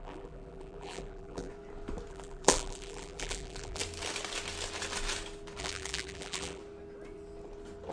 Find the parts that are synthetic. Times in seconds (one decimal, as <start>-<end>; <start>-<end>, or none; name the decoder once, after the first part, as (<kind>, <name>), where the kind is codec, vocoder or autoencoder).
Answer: 0.0-1.5 (vocoder, BigVGAN v2); 2.1-3.8; 5.6-6.6